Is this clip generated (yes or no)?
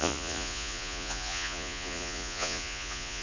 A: yes